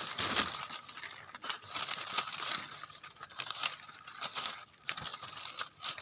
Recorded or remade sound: recorded